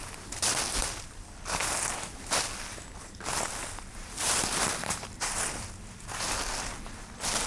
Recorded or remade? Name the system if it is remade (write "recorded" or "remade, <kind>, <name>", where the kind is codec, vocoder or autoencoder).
recorded